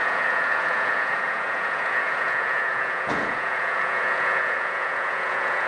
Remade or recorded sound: remade